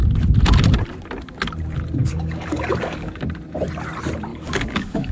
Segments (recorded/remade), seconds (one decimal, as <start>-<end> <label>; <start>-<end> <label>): 0.0-2.0 recorded; 2.0-3.2 remade; 3.2-4.3 recorded; 4.3-5.1 remade

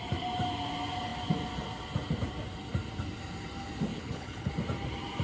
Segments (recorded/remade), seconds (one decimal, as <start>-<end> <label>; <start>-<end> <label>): 0.0-3.9 recorded; 3.9-4.5 remade; 4.5-5.2 recorded

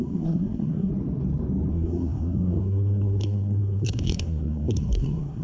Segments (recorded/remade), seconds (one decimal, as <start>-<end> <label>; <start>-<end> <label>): 0.0-0.9 remade; 0.9-1.7 recorded; 1.7-5.4 remade

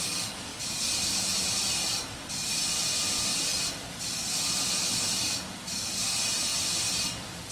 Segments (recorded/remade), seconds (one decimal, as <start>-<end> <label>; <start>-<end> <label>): 0.0-0.5 remade; 0.5-2.3 recorded; 2.3-7.5 remade